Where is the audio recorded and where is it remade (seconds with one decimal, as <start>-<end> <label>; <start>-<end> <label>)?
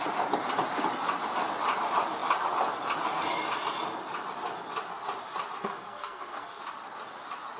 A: 0.0-5.6 recorded; 5.6-6.6 remade; 6.6-7.6 recorded